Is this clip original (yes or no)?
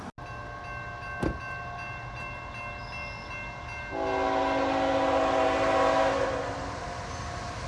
yes